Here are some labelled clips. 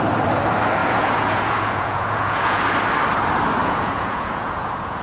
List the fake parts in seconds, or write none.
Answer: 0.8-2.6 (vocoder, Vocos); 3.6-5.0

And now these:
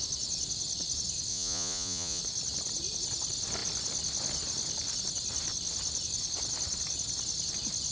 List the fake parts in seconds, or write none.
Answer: 1.3-2.2 (vocoder, Vocos)

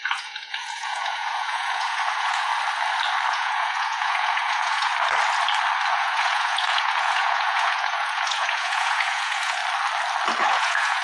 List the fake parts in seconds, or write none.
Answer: 0.0-2.5 (vocoder, Vocos); 3.3-4.9; 5.9-9.6; 10.4-11.0

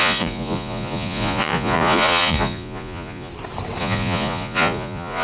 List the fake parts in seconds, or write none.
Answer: 0.0-3.3 (vocoder, Vocos); 3.8-5.2

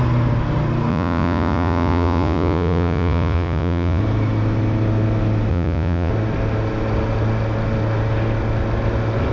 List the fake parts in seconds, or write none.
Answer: 0.9-4.0 (vocoder, Vocos); 5.5-6.1

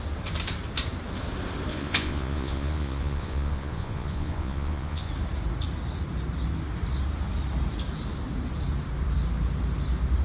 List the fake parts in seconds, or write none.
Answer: 1.7-5.1 (vocoder, Vocos)